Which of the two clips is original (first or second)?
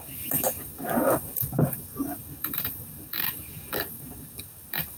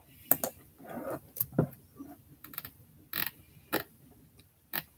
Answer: second